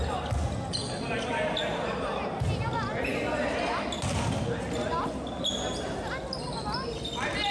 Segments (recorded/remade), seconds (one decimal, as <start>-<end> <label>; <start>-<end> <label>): 0.0-7.5 recorded